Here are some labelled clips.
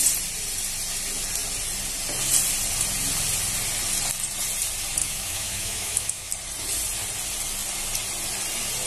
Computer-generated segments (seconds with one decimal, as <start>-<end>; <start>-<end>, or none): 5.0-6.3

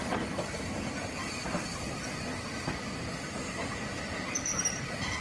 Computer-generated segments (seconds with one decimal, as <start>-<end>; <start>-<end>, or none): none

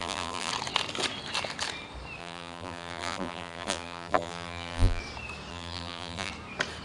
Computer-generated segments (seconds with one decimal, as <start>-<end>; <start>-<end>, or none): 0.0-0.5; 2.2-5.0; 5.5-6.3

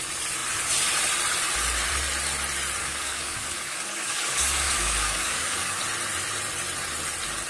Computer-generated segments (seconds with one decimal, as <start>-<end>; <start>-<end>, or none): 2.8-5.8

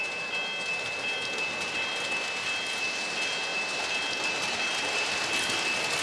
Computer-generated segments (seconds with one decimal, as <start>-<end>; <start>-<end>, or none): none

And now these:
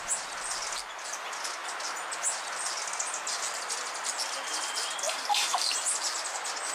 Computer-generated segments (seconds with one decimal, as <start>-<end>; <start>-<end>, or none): none

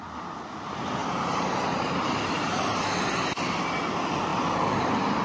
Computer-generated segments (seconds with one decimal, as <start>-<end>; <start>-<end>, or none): 1.0-3.6; 4.3-5.2